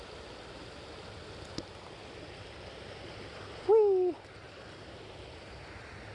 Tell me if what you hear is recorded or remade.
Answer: recorded